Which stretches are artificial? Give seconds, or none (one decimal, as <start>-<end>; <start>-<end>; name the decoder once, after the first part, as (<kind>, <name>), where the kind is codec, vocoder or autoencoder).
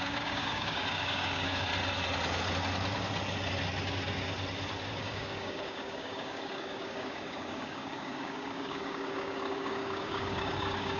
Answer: 0.0-1.7 (codec, DAC); 5.0-11.0